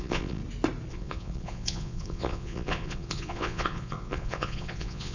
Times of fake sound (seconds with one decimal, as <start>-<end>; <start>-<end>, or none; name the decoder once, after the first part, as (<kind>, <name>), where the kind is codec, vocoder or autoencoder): 0.0-0.4 (vocoder, Vocos); 0.9-5.1